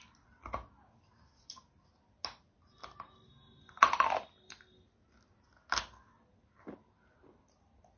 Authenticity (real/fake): real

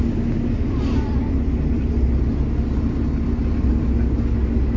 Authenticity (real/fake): real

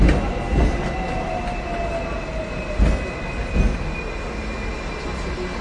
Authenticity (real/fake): real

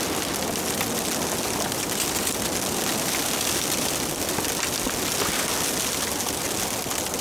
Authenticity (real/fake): real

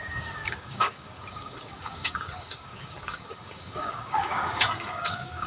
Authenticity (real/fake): fake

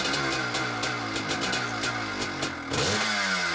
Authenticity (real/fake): real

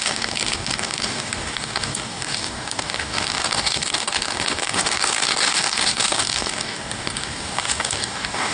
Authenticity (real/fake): fake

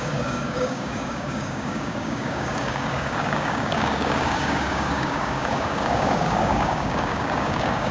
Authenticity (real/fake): fake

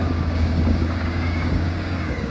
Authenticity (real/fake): fake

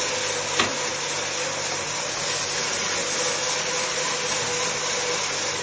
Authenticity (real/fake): real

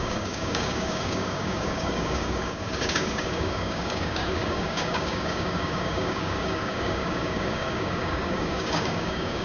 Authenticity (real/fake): fake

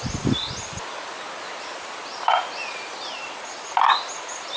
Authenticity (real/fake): real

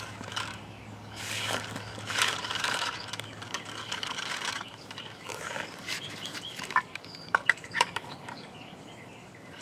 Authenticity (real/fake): fake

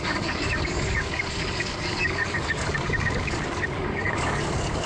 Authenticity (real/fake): fake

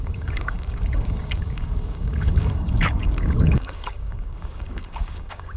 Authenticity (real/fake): fake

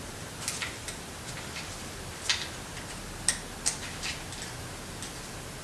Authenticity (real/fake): real